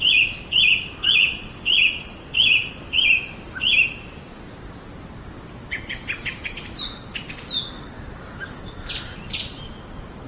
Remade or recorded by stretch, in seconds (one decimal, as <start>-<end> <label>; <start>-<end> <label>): 0.0-10.3 recorded